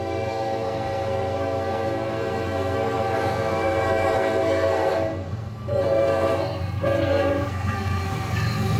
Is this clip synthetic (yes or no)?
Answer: yes